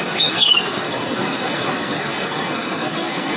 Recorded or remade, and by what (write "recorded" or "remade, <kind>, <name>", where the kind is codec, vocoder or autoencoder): remade, codec, SNAC